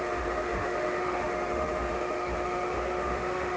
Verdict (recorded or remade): remade